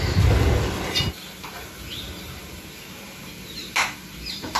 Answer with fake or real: real